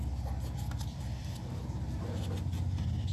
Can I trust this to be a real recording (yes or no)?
yes